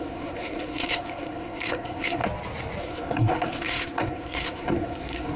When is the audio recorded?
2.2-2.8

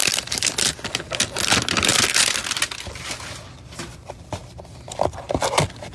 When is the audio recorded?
0.0-5.9

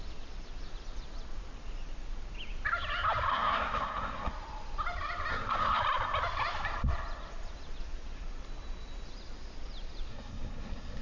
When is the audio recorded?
0.0-3.3; 4.3-5.3; 5.8-10.1

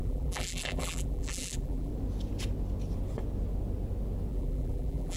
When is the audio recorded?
1.9-4.3

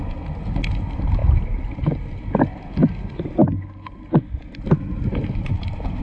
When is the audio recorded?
0.0-6.0

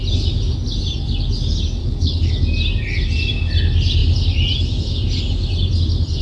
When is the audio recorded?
0.0-1.8; 2.3-6.2

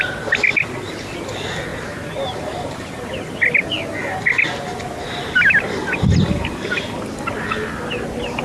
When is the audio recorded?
0.0-1.7; 2.9-8.4